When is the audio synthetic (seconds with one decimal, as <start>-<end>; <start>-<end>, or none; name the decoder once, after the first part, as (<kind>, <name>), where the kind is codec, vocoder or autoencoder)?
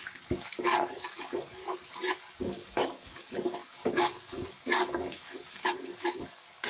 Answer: 0.0-1.6 (codec, DAC); 2.4-6.7